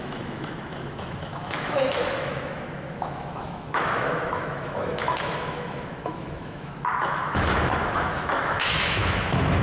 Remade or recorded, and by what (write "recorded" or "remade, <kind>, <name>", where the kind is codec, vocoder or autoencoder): remade, autoencoder, DAC-VAE